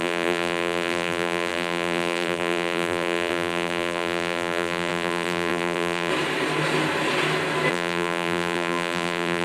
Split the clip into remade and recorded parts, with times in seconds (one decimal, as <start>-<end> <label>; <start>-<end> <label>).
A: 0.0-6.1 remade; 6.1-7.7 recorded; 7.7-9.4 remade